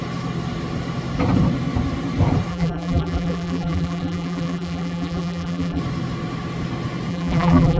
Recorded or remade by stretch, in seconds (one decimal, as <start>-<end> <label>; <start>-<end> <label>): 0.0-2.5 recorded; 2.5-5.8 remade; 5.8-7.1 recorded; 7.1-7.8 remade